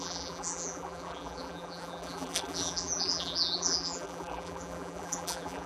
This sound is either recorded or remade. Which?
remade